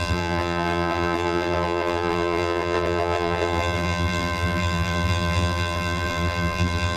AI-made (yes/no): yes